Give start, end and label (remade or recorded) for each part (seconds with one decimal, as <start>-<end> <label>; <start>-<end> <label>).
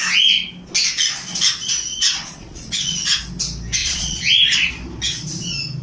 0.0-1.9 recorded; 1.9-3.2 remade; 3.2-3.8 recorded; 3.8-4.7 remade; 4.7-5.8 recorded